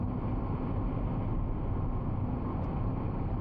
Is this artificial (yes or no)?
no